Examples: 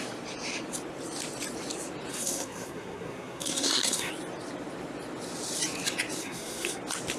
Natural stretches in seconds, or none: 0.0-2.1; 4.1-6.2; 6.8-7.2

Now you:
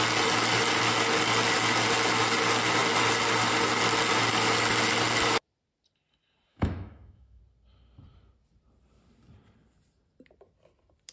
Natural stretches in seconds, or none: 0.0-6.5; 7.4-11.1

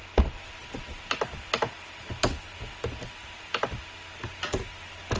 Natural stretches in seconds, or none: 0.0-5.2

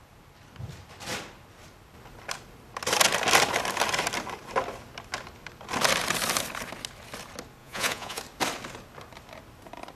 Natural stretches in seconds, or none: 0.0-7.6; 8.2-10.0

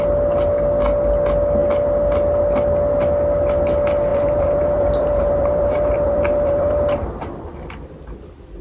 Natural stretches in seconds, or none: 0.0-4.1; 7.3-8.6